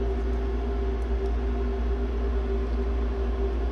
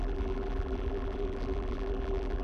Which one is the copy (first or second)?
second